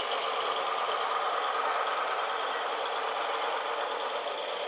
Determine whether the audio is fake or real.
real